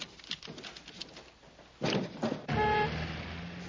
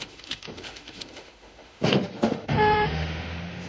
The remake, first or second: second